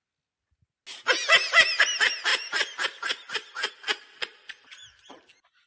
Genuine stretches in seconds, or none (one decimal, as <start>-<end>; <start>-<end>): 0.0-2.3; 3.7-5.7